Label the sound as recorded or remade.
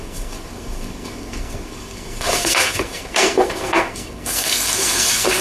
remade